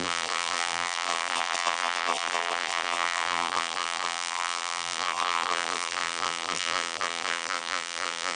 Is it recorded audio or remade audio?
remade